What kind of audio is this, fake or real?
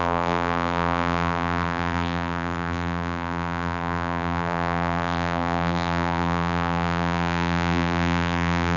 fake